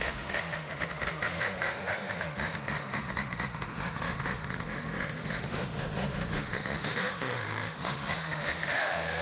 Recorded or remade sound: remade